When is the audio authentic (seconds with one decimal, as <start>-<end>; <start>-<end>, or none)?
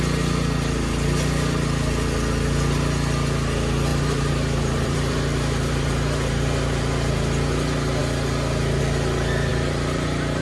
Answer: 0.0-3.9; 7.1-9.5